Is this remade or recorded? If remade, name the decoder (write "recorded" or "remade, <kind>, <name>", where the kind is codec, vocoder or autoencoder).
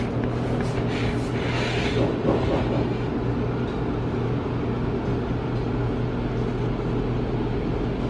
recorded